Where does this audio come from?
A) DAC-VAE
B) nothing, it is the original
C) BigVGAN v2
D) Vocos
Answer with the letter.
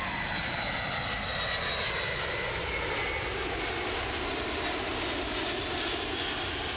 B